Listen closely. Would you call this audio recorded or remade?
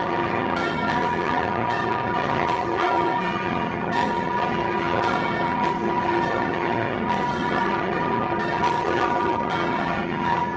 remade